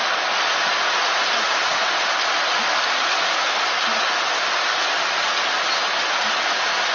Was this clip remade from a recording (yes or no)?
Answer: no